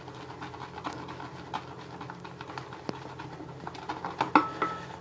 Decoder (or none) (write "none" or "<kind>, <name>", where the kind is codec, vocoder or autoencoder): none